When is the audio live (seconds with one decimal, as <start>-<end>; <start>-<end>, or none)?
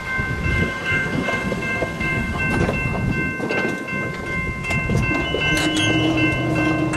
0.0-0.5; 2.4-7.0